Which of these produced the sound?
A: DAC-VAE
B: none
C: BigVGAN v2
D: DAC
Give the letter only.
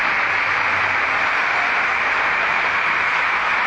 B